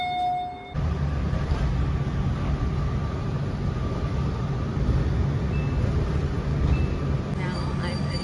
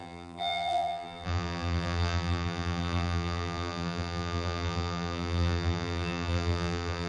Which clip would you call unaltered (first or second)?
first